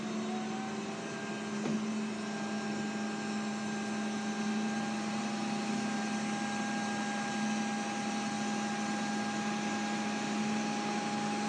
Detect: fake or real real